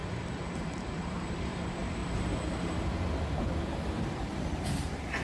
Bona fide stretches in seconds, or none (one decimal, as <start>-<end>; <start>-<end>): 0.0-0.6; 2.0-3.4